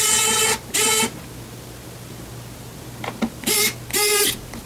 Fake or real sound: real